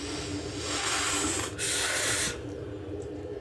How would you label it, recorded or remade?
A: recorded